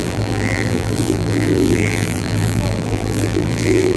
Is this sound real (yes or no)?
no